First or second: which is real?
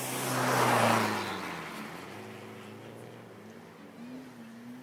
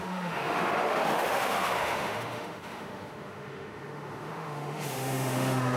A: first